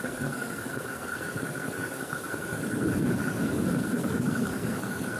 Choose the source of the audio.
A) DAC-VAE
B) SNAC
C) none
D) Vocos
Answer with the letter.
B